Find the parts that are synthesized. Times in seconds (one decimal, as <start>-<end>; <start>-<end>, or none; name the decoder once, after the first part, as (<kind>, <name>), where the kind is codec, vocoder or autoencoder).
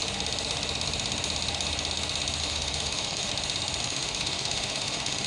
2.4-3.3 (autoencoder, DAC-VAE); 3.8-5.3